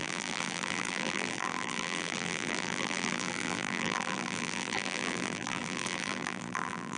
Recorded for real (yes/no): no